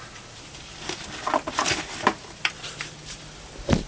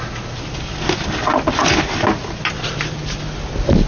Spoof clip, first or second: first